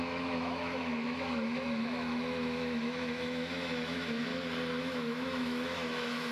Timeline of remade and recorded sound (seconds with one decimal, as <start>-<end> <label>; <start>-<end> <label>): 0.0-4.3 remade; 4.3-4.8 recorded; 4.8-6.3 remade